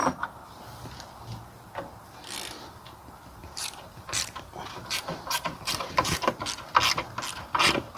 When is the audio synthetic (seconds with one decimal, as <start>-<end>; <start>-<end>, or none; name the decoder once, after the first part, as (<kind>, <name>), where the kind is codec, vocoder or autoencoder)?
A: 0.0-1.0 (vocoder, BigVGAN v2); 3.4-6.3